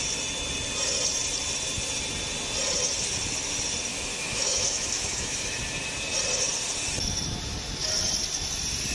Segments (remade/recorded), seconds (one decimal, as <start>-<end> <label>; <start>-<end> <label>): 0.0-3.9 recorded; 3.9-5.6 remade; 5.6-8.9 recorded